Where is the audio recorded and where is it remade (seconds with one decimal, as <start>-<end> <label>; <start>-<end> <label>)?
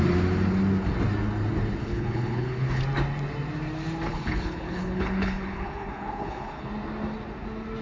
0.0-1.8 recorded; 1.8-2.8 remade; 2.8-4.1 recorded; 4.1-6.7 remade; 6.7-7.8 recorded